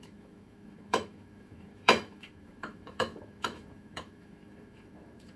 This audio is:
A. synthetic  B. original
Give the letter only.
A